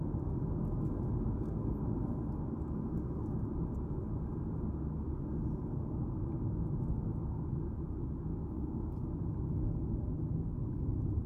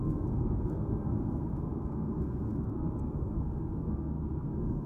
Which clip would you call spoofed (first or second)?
second